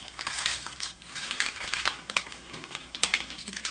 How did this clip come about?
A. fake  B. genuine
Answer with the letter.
A